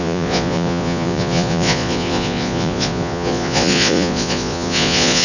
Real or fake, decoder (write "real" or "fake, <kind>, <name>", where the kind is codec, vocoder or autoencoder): fake, vocoder, Vocos